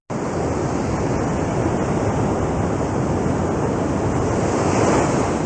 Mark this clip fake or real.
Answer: real